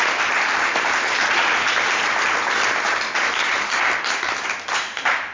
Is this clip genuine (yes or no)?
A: yes